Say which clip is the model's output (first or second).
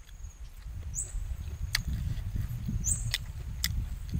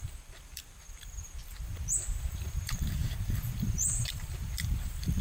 second